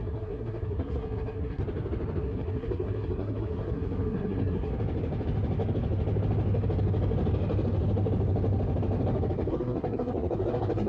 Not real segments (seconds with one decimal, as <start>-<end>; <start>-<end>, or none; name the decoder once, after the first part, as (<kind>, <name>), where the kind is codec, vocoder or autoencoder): 0.0-1.6 (codec, SNAC); 2.2-4.7; 9.5-10.9